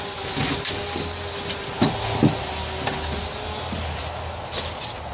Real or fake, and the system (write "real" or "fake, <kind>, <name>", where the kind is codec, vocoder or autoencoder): real